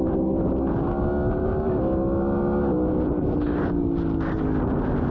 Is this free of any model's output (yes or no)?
yes